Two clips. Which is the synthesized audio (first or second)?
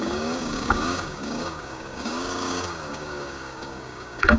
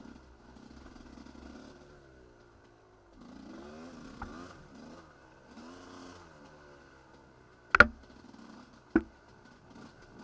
first